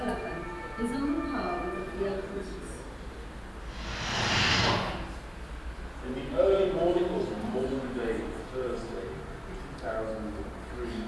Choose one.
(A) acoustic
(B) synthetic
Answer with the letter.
A